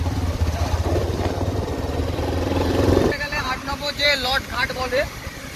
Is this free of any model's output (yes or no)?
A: no